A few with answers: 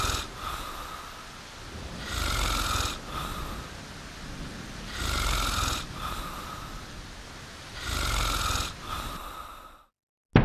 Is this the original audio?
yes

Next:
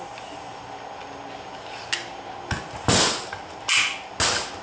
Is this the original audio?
yes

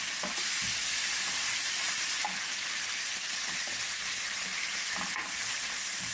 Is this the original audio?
yes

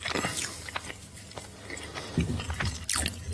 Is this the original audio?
yes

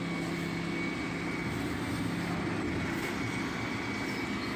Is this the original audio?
yes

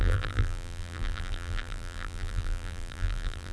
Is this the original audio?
no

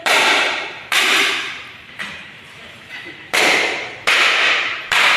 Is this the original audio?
no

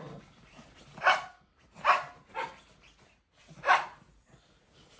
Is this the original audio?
yes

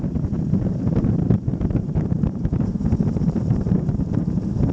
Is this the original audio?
no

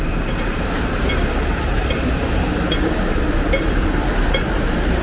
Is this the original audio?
no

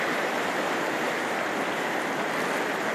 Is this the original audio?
yes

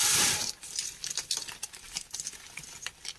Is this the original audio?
no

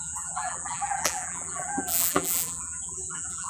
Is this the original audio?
no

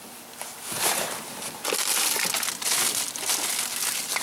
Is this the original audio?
yes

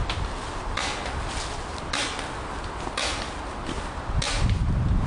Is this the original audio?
yes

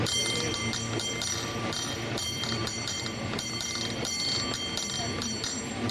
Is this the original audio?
no